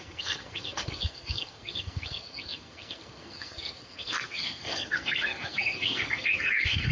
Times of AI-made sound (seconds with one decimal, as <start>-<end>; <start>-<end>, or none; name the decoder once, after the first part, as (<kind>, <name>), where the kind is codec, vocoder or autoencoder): 0.0-6.9 (codec, SNAC)